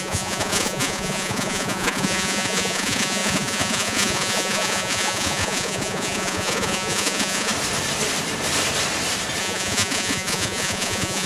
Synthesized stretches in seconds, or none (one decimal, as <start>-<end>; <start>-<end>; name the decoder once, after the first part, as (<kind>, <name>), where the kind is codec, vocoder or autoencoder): 0.0-7.5 (vocoder, Vocos); 9.4-11.3